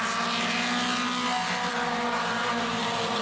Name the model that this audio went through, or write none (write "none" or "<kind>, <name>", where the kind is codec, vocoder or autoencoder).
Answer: none